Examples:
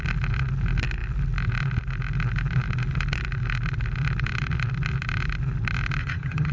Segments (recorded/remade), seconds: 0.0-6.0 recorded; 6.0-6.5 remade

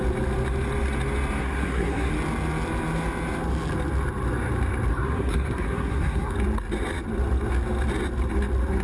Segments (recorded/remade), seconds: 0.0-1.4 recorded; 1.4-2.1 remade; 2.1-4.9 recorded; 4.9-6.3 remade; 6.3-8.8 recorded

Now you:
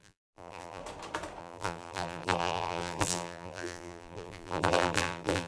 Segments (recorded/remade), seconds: 0.0-0.8 remade; 0.8-1.4 recorded; 1.4-5.5 remade

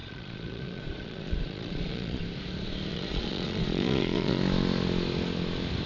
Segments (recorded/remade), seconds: 0.0-2.2 remade; 2.2-2.9 recorded; 2.9-4.4 remade; 4.4-5.9 recorded

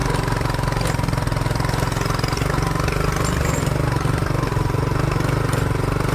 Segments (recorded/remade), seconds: 0.0-6.1 recorded